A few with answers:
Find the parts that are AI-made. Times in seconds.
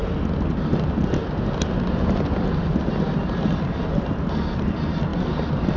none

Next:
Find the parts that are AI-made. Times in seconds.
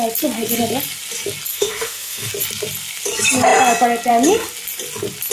1.5-2.3 (autoencoder, DAC-VAE)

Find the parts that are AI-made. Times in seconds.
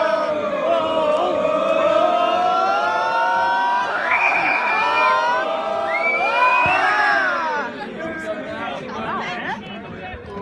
3.9-4.7 (codec, SNAC)